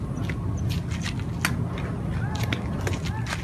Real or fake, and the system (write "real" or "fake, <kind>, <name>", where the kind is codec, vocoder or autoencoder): real